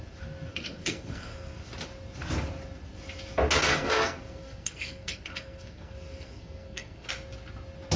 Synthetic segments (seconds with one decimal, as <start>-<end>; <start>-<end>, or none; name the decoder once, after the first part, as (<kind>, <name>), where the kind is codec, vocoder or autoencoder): 0.5-1.6 (codec, SNAC); 3.7-7.1